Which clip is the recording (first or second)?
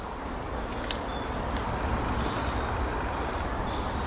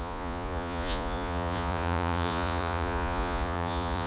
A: first